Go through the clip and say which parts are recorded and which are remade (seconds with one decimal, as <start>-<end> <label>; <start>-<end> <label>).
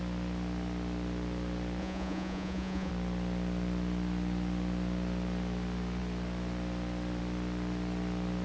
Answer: 0.0-1.8 recorded; 1.8-2.9 remade; 2.9-8.4 recorded